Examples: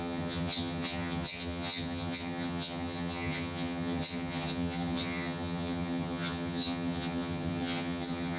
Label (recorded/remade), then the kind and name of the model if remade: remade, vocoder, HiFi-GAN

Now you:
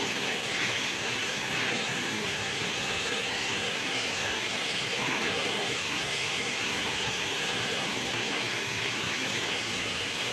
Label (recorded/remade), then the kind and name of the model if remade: remade, codec, SNAC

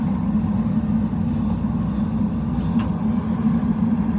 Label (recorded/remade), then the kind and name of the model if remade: recorded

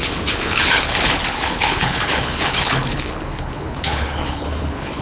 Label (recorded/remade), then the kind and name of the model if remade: remade, codec, HILCodec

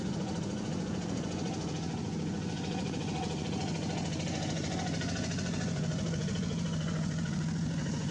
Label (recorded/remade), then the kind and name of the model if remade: remade, vocoder, Vocos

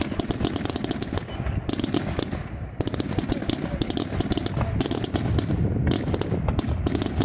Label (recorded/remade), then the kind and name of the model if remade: recorded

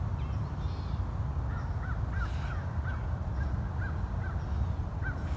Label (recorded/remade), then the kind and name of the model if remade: recorded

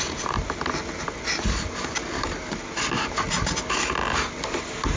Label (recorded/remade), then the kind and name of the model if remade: recorded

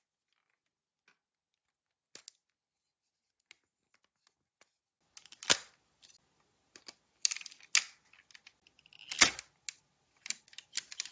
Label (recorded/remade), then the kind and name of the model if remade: recorded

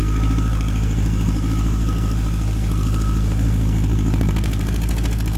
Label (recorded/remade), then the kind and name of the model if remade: remade, codec, SNAC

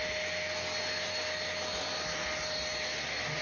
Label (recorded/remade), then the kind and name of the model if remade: recorded